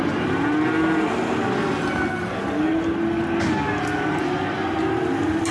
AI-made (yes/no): no